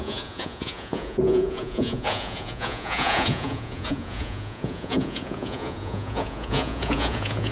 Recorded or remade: remade